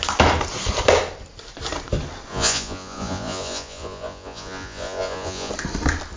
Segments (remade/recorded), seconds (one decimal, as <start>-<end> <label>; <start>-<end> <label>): 0.0-2.3 recorded; 2.3-5.5 remade; 5.5-6.2 recorded